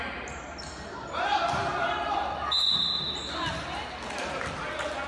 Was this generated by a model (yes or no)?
no